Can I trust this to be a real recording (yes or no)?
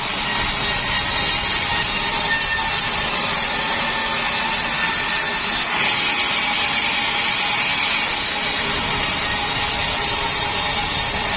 yes